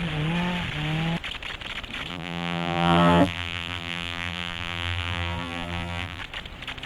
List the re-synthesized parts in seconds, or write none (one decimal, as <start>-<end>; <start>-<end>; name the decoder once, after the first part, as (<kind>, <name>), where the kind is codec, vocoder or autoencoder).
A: 2.1-6.2 (vocoder, BigVGAN v2)